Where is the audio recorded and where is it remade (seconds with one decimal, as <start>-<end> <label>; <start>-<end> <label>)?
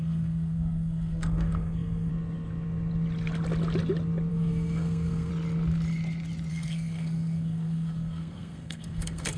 0.0-2.1 remade; 2.1-4.3 recorded; 4.3-5.3 remade; 5.3-6.5 recorded; 6.5-9.4 remade